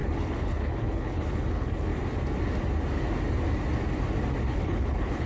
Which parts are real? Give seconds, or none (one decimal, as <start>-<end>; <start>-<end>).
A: 1.9-4.4